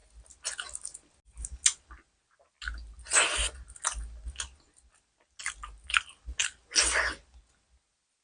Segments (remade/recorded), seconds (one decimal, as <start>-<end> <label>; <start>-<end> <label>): 0.0-8.2 recorded